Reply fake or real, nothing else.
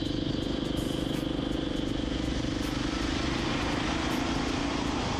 real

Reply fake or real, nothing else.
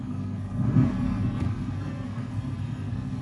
fake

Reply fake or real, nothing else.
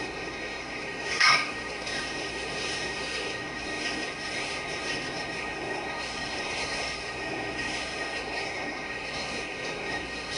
fake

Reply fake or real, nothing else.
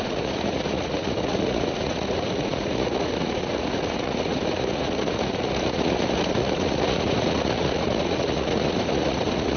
fake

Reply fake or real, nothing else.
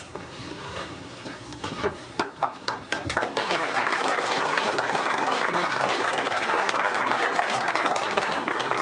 fake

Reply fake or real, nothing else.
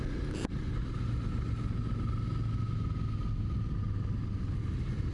real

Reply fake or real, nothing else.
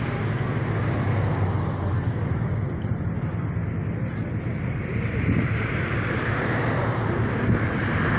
real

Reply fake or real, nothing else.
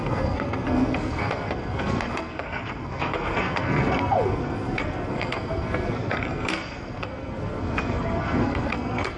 fake